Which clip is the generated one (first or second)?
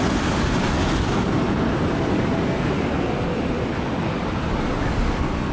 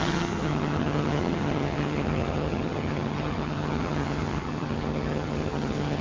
second